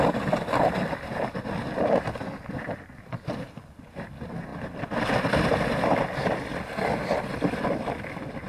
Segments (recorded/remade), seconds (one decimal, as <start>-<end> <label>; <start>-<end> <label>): 0.0-8.5 recorded